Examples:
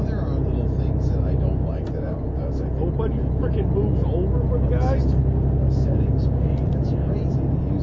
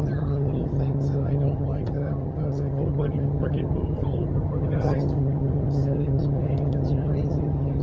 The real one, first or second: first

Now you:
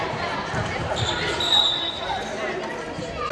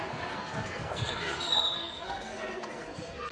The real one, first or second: first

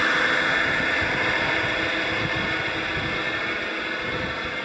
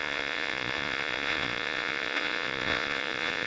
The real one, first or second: first